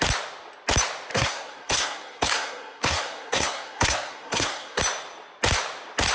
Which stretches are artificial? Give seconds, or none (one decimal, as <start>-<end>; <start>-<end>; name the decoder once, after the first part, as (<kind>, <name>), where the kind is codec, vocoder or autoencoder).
1.1-4.8 (codec, SNAC)